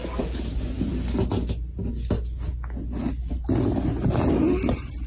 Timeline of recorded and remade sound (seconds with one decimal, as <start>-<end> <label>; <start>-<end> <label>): 0.0-5.1 recorded